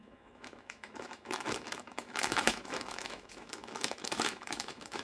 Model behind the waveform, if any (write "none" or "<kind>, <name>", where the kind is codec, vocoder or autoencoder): autoencoder, DAC-VAE